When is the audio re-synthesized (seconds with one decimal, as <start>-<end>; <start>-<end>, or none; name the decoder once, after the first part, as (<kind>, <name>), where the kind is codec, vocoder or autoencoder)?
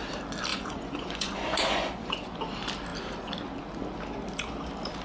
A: 0.5-2.4 (vocoder, Vocos)